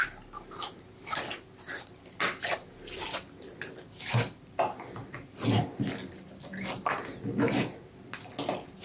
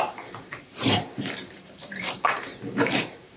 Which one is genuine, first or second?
first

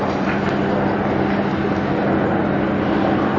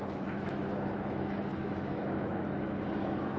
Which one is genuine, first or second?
first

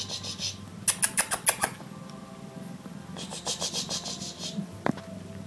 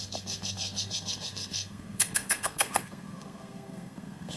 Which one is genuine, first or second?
first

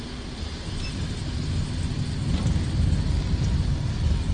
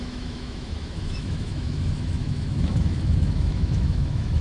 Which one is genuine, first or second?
first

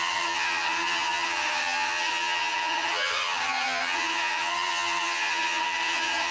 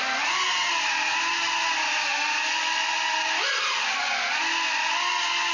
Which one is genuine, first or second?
second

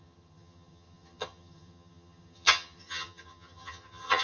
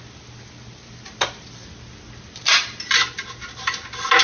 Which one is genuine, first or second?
second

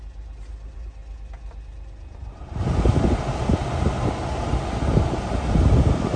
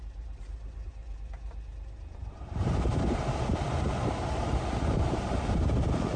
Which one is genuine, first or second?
first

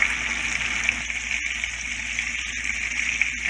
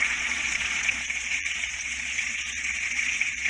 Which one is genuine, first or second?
first